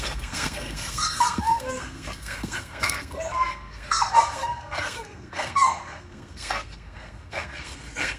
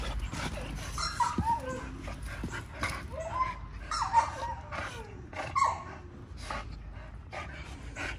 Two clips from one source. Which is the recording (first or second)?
second